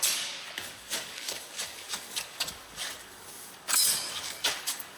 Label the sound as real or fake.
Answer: fake